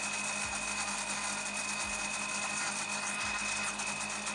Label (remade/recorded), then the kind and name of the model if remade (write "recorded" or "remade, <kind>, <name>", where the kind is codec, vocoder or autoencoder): recorded